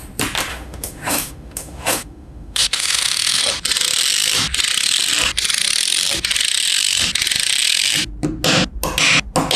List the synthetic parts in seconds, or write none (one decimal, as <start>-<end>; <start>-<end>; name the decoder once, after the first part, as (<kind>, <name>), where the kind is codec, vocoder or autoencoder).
0.5-3.4 (autoencoder, DAC-VAE)